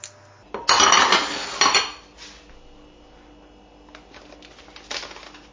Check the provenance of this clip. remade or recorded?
recorded